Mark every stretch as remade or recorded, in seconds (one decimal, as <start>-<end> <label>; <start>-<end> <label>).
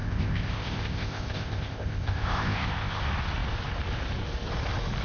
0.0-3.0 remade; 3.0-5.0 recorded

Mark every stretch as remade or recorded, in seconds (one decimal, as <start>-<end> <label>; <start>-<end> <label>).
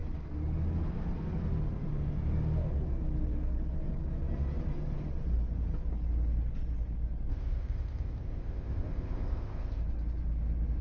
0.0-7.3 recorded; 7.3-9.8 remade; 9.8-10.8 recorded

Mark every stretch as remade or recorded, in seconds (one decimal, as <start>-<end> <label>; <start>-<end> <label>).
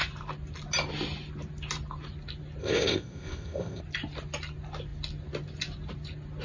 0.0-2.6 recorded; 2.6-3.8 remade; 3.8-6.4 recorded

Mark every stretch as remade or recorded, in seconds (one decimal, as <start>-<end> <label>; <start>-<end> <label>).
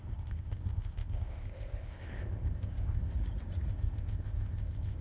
0.0-3.1 remade; 3.1-3.7 recorded; 3.7-5.0 remade